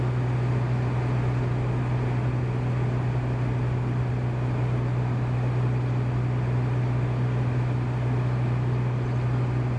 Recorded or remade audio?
recorded